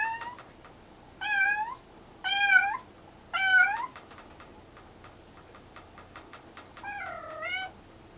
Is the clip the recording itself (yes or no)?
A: yes